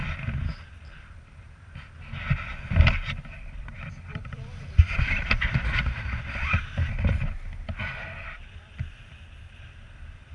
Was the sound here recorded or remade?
remade